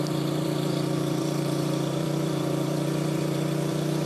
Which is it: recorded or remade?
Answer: remade